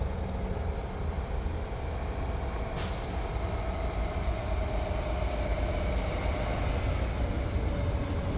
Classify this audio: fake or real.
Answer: real